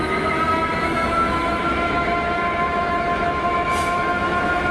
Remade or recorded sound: remade